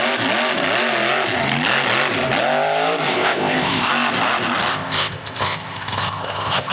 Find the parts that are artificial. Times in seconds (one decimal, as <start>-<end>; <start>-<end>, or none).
3.1-3.9; 4.7-6.7